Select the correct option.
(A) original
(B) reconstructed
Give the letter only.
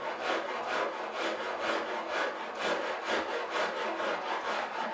A